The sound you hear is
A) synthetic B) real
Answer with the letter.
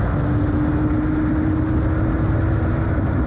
B